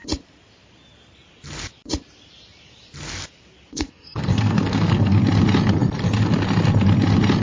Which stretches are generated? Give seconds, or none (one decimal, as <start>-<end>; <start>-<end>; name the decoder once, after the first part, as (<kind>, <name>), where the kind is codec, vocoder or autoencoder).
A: 3.7-5.2 (codec, SNAC)